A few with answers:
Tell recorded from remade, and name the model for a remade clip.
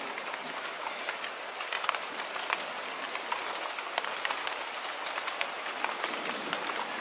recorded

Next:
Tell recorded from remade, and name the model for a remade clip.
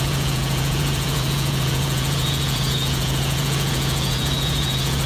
remade, vocoder, Vocos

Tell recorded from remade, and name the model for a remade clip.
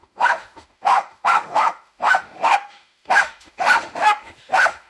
remade, autoencoder, DAC-VAE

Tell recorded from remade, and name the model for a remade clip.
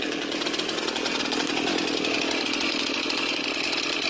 recorded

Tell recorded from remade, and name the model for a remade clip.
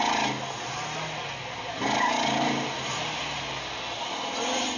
recorded